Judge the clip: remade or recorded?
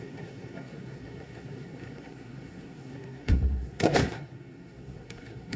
remade